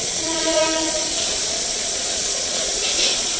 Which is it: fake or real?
fake